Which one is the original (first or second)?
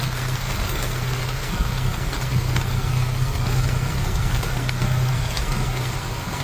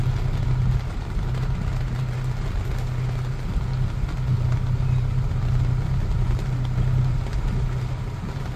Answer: second